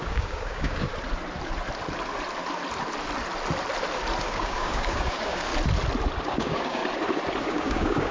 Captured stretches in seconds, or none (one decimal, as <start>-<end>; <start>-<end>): 0.9-4.2; 5.5-6.2; 6.8-7.4